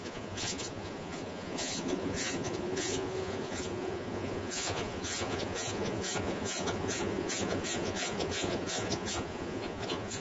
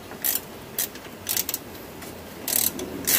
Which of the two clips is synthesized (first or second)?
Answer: first